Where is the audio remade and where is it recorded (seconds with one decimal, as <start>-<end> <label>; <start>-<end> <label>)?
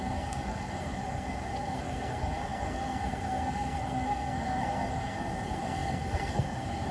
0.0-6.9 remade